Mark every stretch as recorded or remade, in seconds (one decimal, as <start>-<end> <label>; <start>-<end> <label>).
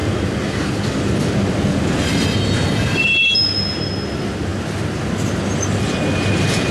0.0-6.7 recorded